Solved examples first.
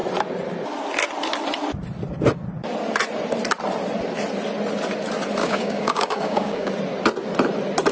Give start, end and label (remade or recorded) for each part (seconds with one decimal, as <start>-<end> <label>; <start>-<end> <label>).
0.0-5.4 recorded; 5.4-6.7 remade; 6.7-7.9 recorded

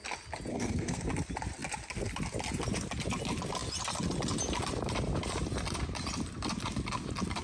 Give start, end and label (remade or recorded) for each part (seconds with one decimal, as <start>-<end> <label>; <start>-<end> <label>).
0.0-0.5 recorded; 0.5-1.1 remade; 1.1-7.4 recorded

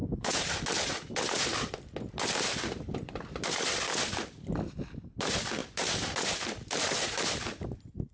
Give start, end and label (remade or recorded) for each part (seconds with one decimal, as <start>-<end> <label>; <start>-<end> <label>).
0.0-0.9 remade; 0.9-5.6 recorded; 5.6-7.2 remade; 7.2-8.1 recorded